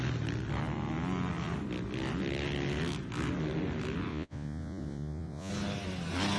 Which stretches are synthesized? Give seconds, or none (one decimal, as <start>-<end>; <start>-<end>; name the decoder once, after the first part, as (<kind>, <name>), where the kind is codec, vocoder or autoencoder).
4.1-5.5 (vocoder, Vocos)

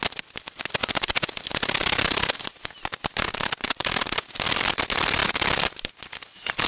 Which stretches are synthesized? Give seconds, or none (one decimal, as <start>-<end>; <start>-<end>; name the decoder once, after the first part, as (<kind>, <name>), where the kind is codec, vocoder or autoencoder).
none

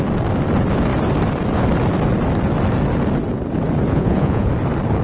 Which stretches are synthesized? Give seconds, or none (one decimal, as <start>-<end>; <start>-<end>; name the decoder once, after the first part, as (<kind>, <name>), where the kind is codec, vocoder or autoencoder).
3.9-4.5 (vocoder, Vocos)

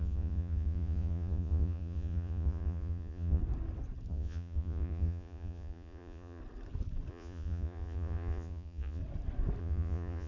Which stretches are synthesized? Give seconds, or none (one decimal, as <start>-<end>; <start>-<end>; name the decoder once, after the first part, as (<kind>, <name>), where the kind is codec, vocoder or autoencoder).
0.0-3.4 (vocoder, Vocos); 4.1-6.4; 7.1-9.0; 9.6-10.3

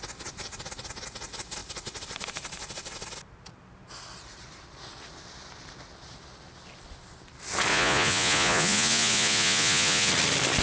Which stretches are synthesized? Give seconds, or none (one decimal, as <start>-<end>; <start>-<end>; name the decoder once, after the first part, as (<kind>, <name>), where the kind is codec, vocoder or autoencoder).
7.7-10.1 (vocoder, Vocos)